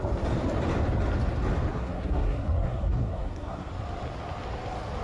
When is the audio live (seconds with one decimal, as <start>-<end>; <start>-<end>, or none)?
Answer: 0.0-1.7; 3.7-5.0